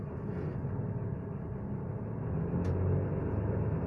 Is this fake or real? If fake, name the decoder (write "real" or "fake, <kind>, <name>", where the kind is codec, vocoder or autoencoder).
real